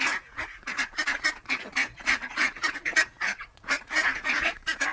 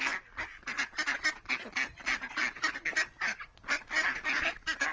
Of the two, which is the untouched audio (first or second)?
second